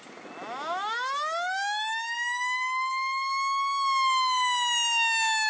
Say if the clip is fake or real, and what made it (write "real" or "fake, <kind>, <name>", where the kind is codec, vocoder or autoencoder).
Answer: real